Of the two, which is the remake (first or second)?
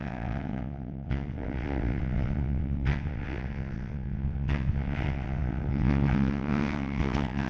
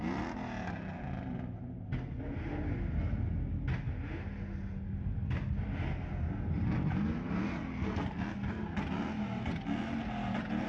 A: first